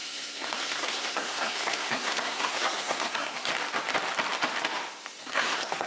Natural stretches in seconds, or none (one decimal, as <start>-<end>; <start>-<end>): 3.5-5.2